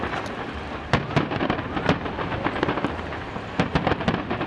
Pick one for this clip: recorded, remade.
recorded